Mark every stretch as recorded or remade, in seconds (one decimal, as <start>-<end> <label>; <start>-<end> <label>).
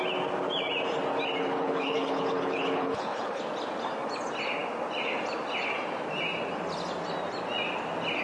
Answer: 0.0-1.4 recorded; 1.4-3.4 remade; 3.4-8.2 recorded